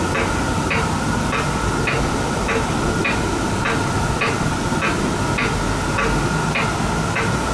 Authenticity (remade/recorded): recorded